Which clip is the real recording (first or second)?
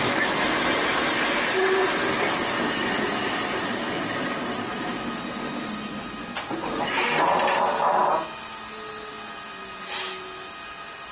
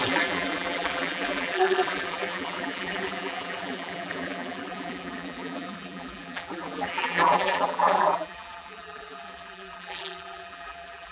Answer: first